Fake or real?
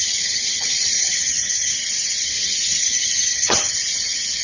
fake